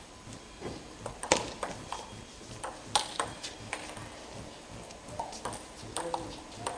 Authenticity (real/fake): real